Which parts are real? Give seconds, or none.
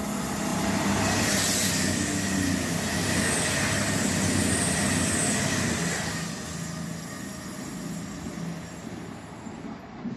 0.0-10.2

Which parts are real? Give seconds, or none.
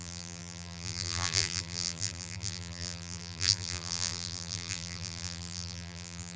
none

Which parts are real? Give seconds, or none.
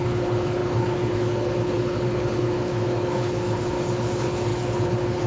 none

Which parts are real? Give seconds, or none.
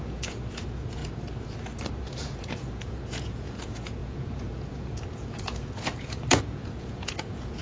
1.0-1.9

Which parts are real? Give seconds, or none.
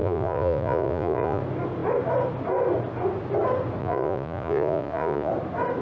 1.4-3.8; 5.3-5.8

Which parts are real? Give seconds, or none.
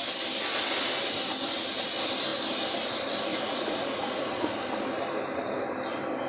0.0-3.3; 4.5-6.3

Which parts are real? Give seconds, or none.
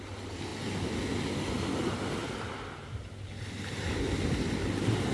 0.0-5.1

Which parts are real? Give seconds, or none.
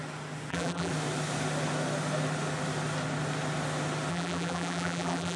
0.0-0.5; 0.9-4.1